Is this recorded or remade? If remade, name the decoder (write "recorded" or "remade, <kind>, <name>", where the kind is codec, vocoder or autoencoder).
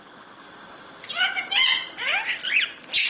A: recorded